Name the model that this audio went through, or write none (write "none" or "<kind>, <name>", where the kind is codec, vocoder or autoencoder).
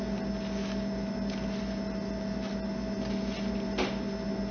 none